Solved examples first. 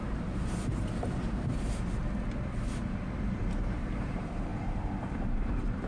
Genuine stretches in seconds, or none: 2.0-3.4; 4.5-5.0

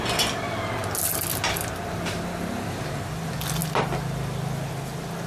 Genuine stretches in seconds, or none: 0.0-5.3

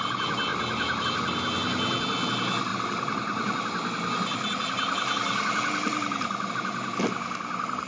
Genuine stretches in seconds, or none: 0.0-2.7; 6.5-7.9

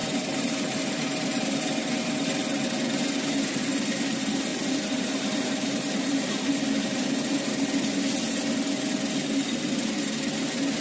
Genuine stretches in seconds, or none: 1.6-4.5; 6.5-10.8

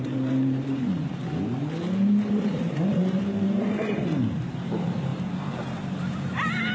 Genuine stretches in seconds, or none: 1.2-2.3